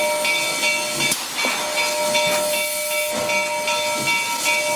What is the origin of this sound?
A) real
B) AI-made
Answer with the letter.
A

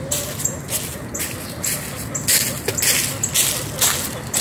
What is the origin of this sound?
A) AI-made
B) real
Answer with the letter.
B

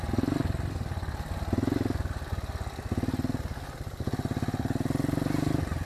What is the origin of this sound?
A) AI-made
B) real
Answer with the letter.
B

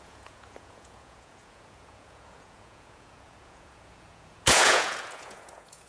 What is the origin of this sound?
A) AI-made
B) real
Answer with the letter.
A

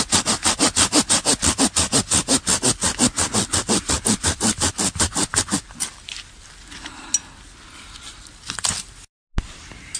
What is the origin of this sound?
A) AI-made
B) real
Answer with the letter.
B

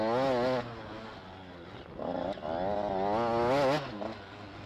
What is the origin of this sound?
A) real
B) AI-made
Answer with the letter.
A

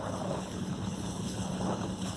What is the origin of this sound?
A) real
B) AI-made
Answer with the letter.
B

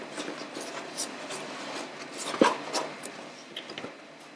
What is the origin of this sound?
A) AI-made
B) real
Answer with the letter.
B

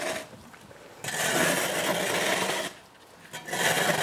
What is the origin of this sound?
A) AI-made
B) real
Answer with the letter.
B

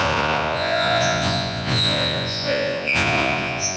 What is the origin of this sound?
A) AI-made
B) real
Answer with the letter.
A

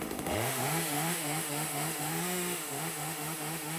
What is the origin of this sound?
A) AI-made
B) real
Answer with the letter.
A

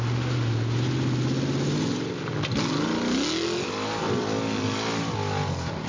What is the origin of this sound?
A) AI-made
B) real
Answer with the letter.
B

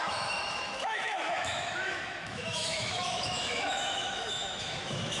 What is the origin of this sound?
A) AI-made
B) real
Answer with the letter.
A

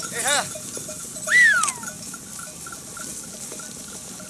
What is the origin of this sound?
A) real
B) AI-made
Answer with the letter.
A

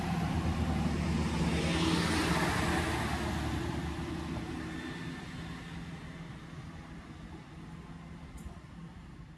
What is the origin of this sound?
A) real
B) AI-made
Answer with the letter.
A